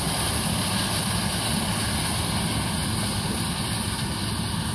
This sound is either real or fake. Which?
real